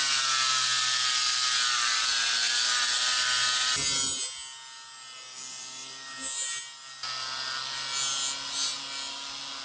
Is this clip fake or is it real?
real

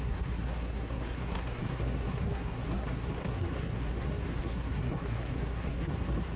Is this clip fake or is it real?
fake